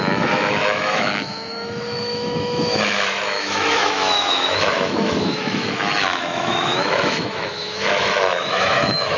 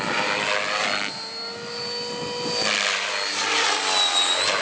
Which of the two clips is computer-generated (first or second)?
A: first